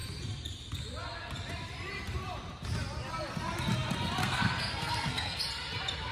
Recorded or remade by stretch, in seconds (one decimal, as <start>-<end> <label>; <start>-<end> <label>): 0.0-4.2 recorded; 4.2-5.4 remade; 5.4-6.1 recorded